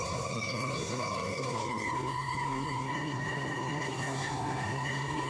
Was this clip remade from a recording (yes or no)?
yes